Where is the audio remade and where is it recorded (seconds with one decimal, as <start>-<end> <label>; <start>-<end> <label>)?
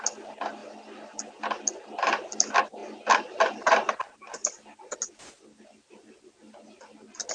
0.0-7.3 recorded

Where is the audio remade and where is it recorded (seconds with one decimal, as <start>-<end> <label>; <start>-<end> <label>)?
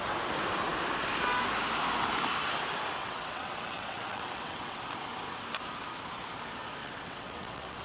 0.0-3.0 recorded; 3.0-4.8 remade; 4.8-6.8 recorded; 6.8-7.8 remade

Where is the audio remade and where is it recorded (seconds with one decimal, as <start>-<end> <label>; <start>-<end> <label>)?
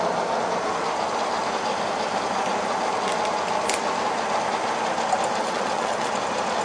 0.0-5.4 recorded; 5.4-6.1 remade; 6.1-6.6 recorded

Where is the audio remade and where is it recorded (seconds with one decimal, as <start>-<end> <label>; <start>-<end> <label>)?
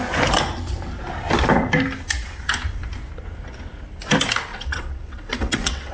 0.0-4.5 recorded; 4.5-5.9 remade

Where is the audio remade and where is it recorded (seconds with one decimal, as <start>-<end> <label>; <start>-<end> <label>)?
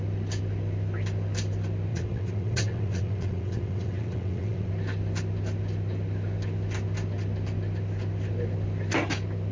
0.0-1.9 recorded; 1.9-4.7 remade; 4.7-9.5 recorded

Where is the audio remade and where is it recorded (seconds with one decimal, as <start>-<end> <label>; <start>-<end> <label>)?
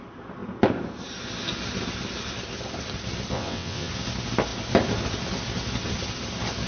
0.0-3.3 recorded; 3.3-3.9 remade; 3.9-6.7 recorded